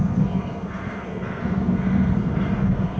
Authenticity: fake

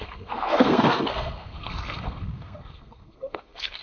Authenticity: fake